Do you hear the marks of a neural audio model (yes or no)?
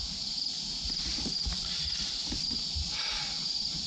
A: no